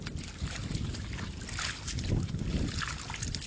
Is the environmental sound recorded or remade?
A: recorded